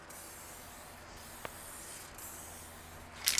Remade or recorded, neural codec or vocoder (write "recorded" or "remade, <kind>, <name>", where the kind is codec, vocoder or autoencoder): recorded